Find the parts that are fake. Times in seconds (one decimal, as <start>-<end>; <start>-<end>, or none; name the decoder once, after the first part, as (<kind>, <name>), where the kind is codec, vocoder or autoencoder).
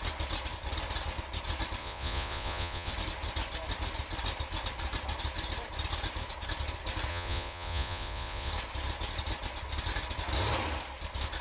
1.8-2.9 (vocoder, Vocos); 7.1-8.5